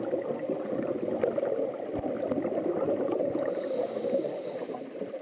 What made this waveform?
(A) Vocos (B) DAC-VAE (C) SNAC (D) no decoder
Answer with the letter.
D